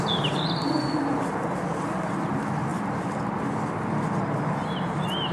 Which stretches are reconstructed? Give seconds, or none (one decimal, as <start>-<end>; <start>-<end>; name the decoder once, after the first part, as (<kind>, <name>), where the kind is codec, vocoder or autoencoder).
none